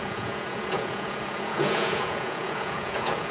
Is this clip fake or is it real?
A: fake